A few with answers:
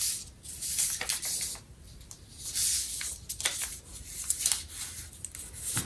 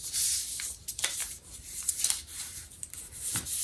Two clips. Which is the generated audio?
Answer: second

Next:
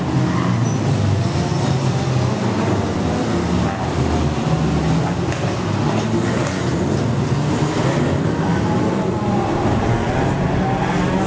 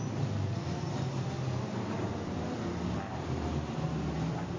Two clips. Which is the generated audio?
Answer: second